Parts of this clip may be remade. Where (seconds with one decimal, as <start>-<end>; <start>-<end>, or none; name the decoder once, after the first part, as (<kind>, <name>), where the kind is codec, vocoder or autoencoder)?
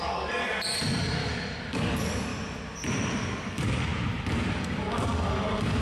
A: 0.0-0.4 (codec, DAC); 1.0-2.3; 3.1-3.9; 4.5-5.8